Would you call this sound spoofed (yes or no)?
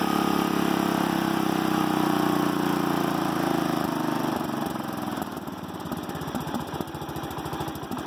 yes